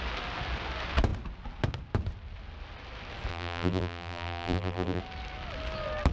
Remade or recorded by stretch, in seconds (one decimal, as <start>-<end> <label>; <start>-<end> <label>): 0.0-3.3 recorded; 3.3-5.0 remade; 5.0-6.1 recorded